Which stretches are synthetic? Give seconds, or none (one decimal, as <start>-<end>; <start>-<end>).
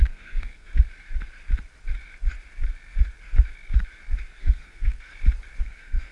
0.0-0.7; 4.4-5.1; 5.6-6.1